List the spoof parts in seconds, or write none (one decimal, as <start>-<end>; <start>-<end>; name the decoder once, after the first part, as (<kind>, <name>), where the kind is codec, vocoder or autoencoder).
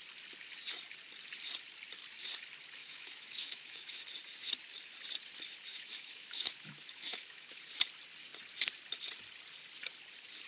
2.8-4.0 (autoencoder, DAC-VAE); 5.7-7.6